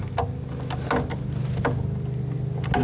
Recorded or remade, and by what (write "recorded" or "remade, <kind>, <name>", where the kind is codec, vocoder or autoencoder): recorded